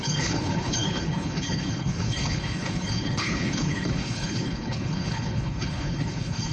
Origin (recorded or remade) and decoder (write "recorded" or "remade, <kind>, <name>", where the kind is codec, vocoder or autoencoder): remade, codec, HILCodec